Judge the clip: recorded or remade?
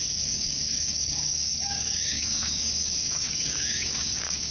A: remade